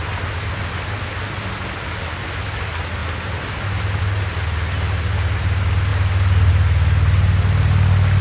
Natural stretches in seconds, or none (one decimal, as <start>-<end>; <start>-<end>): 0.0-8.2